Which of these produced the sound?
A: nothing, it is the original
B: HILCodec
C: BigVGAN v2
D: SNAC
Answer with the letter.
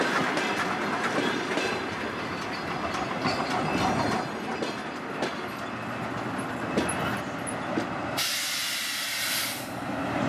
A